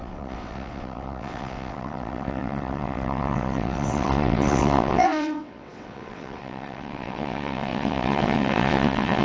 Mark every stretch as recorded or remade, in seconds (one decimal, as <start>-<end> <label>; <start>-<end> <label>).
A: 0.0-9.2 remade